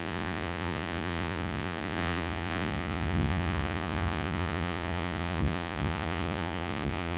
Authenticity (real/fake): fake